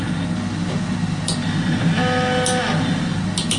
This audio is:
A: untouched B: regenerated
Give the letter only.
A